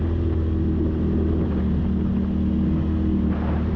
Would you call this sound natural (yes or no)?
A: yes